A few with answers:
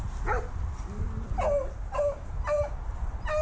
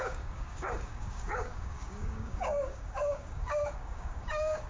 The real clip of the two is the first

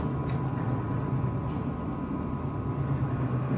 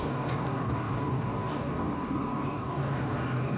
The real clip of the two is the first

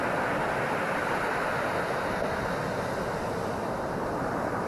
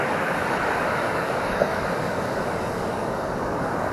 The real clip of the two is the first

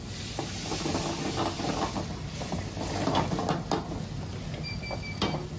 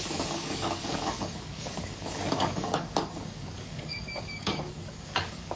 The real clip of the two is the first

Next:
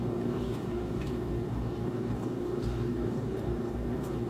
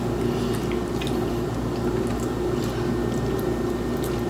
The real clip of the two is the second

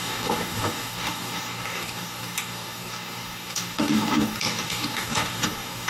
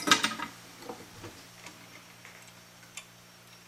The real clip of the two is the second